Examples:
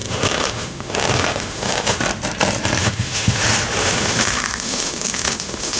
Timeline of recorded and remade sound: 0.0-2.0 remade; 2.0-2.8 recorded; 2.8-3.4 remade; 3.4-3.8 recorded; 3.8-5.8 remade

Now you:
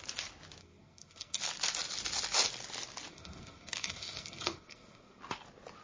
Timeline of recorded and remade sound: 0.0-0.6 recorded; 0.6-1.4 remade; 1.4-3.1 recorded; 3.1-5.2 remade; 5.2-5.8 recorded

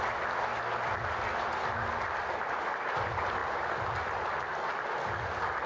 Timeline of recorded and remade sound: 0.0-5.7 recorded